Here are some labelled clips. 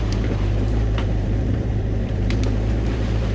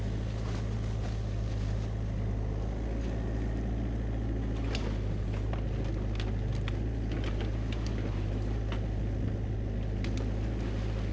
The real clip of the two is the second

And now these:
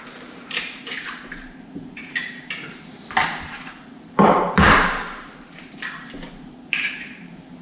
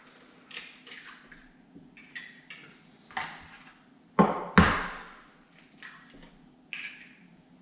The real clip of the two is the second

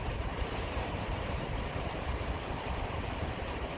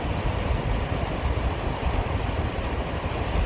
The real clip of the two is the second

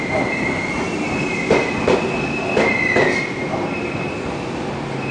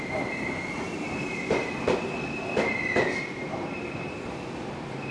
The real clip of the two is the first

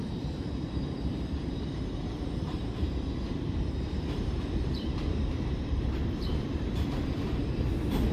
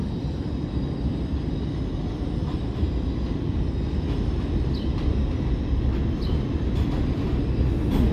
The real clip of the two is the second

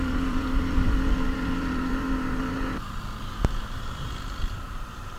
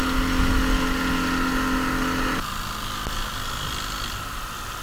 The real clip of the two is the second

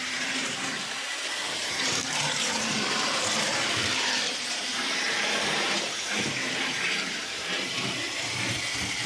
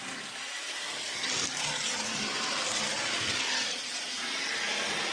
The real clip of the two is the second